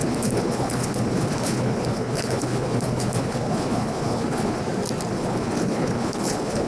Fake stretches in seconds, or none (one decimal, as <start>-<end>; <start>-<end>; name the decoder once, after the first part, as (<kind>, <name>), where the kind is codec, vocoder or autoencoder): 0.0-4.6 (codec, HILCodec); 5.1-6.7